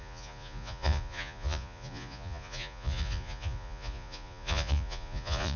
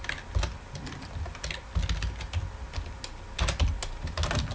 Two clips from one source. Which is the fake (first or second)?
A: first